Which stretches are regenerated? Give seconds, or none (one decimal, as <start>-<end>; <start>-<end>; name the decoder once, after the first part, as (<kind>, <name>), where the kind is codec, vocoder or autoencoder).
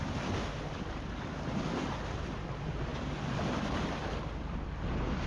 none